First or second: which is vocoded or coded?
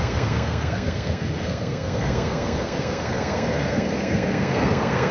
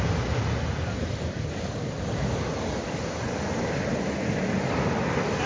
first